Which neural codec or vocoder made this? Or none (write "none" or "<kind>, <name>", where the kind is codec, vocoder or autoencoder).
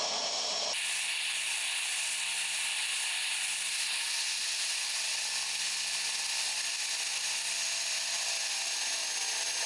none